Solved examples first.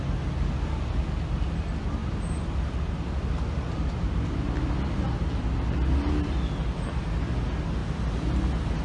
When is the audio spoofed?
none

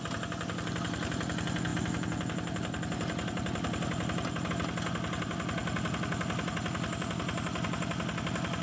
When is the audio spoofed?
none

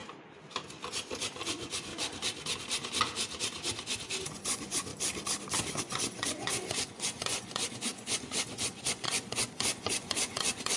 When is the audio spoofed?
1.5-1.9 (vocoder, Vocos); 4.2-4.9; 5.8-10.8

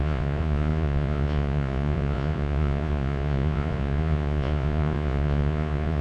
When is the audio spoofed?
0.0-6.0 (vocoder, Vocos)

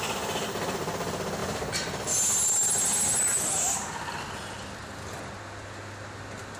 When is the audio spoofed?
none

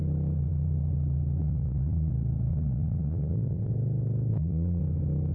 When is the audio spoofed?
1.4-2.1 (vocoder, Vocos); 2.5-3.7; 4.3-4.8

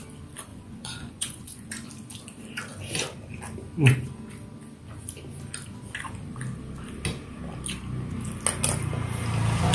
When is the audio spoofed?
0.5-1.9 (vocoder, Vocos)